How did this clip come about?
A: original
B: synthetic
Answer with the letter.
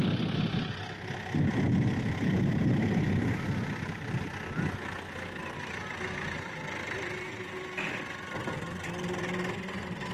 A